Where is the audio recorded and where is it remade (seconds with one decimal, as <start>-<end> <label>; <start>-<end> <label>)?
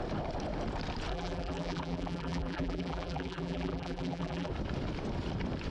0.0-1.1 recorded; 1.1-4.5 remade; 4.5-5.7 recorded